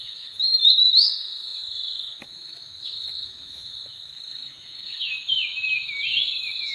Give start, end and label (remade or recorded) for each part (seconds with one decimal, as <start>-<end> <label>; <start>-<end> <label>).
0.0-6.7 remade